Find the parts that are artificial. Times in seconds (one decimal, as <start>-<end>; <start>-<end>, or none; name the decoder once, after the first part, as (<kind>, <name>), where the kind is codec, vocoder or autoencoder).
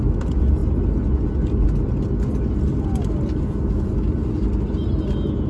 none